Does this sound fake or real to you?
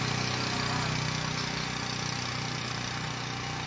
real